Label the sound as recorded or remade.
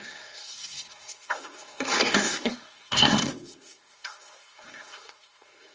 remade